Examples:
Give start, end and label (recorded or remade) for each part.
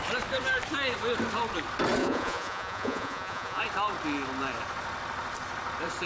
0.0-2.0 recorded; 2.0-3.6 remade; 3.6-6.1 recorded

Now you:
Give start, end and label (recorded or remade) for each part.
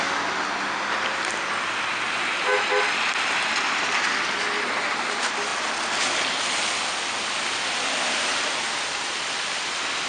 0.0-10.1 recorded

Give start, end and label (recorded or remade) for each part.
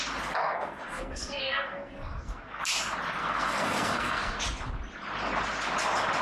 0.0-0.4 recorded; 0.4-2.6 remade; 2.6-3.2 recorded; 3.2-4.4 remade; 4.4-6.2 recorded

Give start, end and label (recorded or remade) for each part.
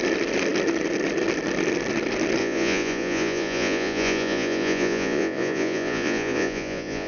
0.0-2.4 recorded; 2.4-7.1 remade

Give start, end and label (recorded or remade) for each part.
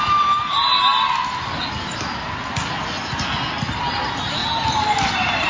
0.0-5.5 recorded